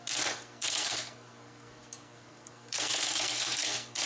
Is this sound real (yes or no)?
no